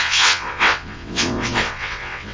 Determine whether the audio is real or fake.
fake